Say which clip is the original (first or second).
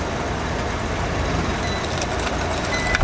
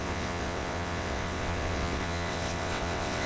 first